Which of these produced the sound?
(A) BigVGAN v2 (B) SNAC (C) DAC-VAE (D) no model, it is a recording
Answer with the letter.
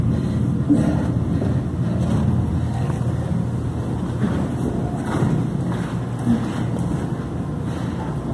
D